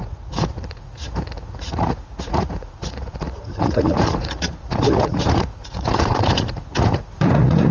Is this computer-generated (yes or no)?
yes